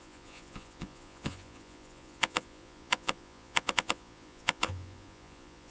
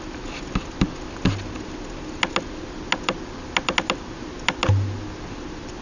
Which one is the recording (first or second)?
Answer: second